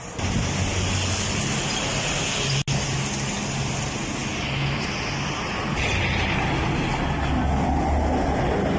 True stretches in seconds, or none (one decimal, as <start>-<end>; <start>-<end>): 0.0-8.8

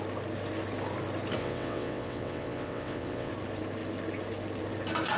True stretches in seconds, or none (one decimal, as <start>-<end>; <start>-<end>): 0.0-1.4; 3.3-5.2

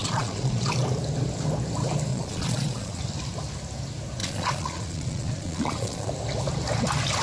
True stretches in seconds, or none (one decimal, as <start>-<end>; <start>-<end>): 0.7-2.1; 3.0-4.2; 6.1-7.2

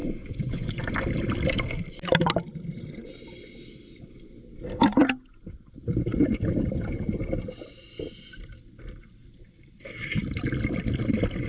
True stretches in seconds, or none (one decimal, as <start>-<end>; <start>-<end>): 0.8-11.5

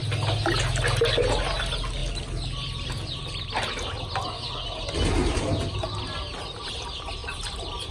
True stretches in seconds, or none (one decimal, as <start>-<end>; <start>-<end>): 0.0-7.9